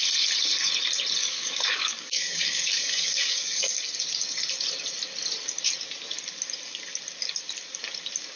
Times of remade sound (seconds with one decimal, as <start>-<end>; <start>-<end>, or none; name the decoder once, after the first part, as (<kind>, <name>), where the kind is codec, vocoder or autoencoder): 1.2-3.7 (codec, DAC)